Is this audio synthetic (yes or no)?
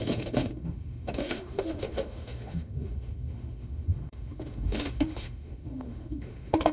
yes